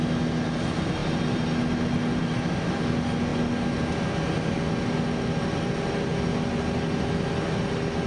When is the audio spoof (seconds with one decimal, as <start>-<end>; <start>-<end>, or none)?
none